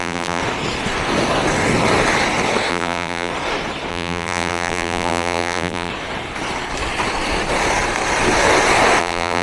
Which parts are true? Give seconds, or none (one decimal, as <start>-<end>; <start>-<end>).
0.4-2.7; 3.3-3.9; 5.9-9.0